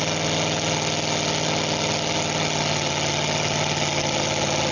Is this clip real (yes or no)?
yes